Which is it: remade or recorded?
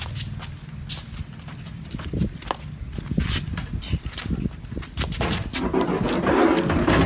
recorded